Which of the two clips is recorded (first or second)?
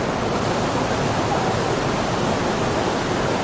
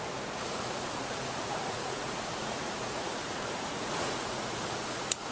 first